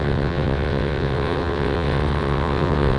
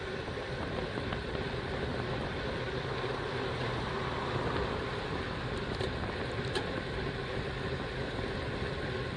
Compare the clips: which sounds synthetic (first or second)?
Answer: first